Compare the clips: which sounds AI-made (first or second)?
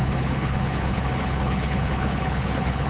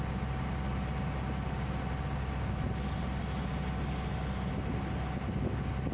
first